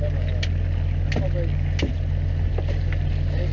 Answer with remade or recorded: recorded